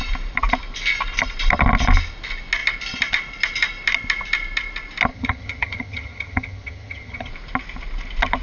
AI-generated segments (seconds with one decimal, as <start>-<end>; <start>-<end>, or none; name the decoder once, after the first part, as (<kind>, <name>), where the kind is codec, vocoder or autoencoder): 5.1-7.3 (vocoder, HiFi-GAN)